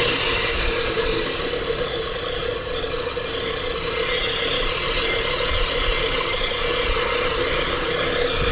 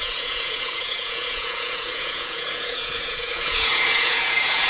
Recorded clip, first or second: first